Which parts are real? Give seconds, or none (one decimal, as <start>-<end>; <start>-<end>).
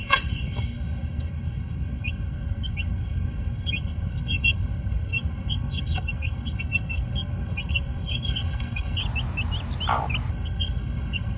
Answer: 9.0-10.3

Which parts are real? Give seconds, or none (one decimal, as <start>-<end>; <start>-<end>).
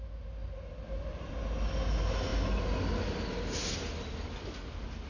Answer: 0.0-5.1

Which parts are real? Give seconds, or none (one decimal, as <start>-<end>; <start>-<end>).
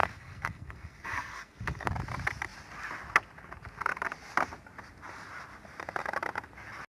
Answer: 1.9-6.9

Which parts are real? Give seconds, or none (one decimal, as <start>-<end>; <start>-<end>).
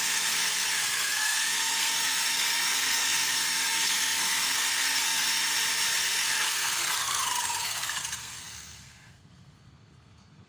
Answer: 5.5-6.0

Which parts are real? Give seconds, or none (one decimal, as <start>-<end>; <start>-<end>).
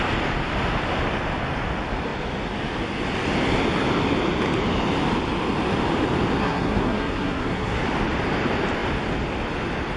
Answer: 0.0-6.4; 7.8-10.0